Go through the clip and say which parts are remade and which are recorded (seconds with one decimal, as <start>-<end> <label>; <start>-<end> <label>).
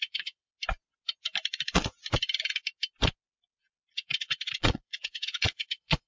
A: 0.0-0.5 remade; 0.5-3.9 recorded; 3.9-6.1 remade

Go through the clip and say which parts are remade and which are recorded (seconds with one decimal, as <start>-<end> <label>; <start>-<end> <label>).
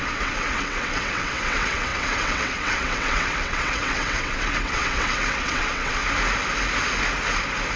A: 0.0-6.0 remade; 6.0-7.8 recorded